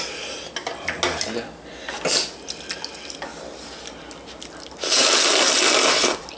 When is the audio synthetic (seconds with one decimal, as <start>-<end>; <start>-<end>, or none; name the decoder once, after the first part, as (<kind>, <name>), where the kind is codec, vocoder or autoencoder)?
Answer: none